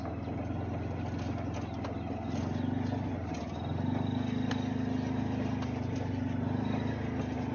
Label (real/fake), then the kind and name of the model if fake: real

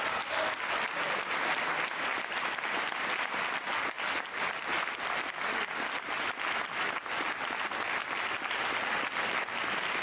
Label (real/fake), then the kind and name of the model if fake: real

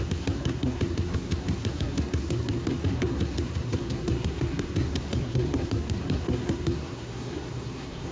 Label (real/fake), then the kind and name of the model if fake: fake, codec, SNAC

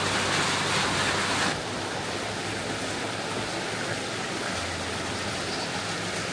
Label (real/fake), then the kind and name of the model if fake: real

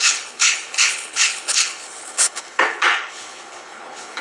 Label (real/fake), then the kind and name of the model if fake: fake, codec, HILCodec